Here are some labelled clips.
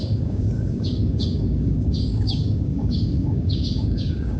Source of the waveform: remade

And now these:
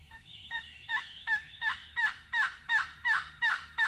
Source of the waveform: remade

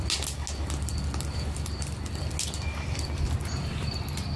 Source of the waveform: recorded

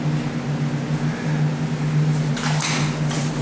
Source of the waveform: recorded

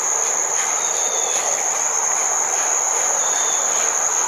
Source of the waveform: recorded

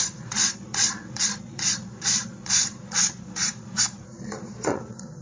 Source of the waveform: remade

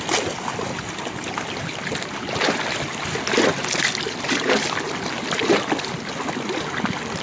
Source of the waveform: recorded